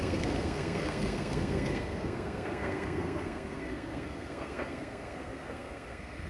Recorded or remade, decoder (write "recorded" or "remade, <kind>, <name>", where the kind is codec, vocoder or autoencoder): remade, codec, SNAC